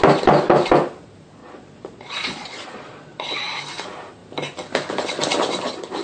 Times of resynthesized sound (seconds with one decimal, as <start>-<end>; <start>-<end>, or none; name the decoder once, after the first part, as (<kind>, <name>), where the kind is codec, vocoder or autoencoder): 1.4-3.6 (vocoder, Vocos)